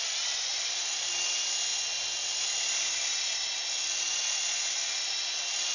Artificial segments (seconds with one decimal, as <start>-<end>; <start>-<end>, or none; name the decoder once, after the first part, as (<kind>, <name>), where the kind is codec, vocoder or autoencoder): 0.5-1.1 (vocoder, BigVGAN v2)